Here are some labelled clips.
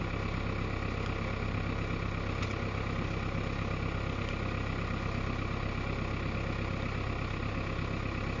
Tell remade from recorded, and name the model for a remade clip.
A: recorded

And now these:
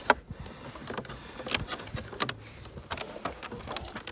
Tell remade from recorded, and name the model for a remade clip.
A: recorded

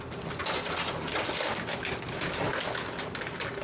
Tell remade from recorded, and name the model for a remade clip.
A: recorded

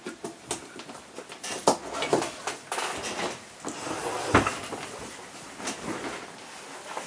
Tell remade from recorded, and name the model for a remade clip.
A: recorded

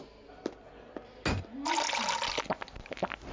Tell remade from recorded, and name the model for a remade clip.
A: recorded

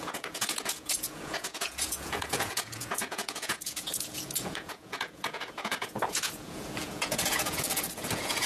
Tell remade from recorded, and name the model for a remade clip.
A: remade, vocoder, Vocos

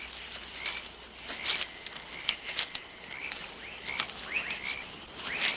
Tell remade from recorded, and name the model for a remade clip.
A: recorded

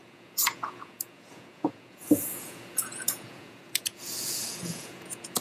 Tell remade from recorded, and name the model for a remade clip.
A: remade, vocoder, Vocos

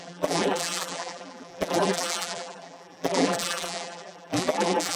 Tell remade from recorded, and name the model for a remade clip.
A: remade, vocoder, BigVGAN v2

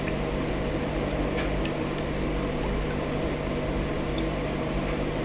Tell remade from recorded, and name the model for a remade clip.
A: recorded